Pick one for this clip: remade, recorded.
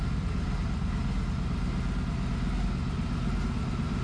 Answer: recorded